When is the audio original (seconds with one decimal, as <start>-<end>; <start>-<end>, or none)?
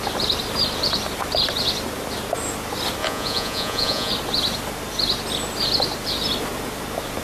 0.0-3.0; 4.1-7.2